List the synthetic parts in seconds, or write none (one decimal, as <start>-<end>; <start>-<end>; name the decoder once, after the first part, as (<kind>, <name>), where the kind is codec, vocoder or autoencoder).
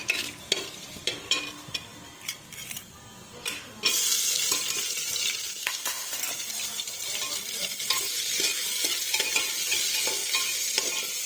5.6-6.2 (autoencoder, DAC-VAE)